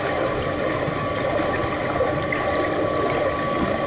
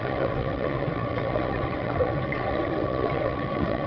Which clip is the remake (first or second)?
second